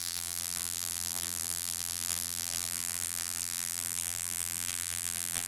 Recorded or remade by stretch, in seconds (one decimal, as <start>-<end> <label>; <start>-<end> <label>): 0.0-5.5 remade